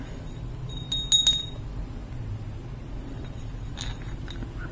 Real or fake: real